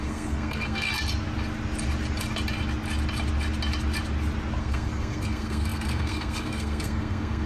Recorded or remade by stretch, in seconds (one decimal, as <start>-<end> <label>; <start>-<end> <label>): 0.0-0.9 remade; 0.9-4.6 recorded; 4.6-7.5 remade